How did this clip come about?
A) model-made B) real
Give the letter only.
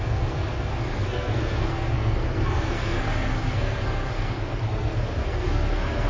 A